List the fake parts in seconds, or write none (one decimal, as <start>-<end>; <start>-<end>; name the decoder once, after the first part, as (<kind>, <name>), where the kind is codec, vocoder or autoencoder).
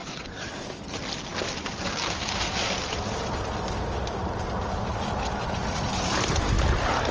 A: 0.0-0.7 (vocoder, WaveNeXt)